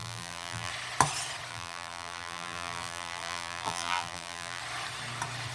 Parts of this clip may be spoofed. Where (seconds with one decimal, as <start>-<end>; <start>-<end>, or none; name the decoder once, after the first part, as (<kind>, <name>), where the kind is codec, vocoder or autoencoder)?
0.0-0.7 (vocoder, BigVGAN v2); 1.5-4.6